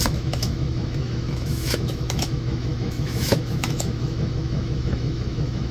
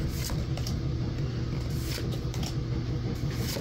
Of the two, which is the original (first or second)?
second